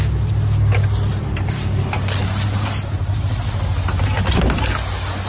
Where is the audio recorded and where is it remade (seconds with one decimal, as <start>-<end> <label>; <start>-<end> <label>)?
0.0-1.1 recorded; 1.1-1.8 remade; 1.8-5.3 recorded